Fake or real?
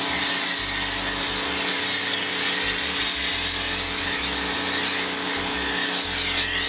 real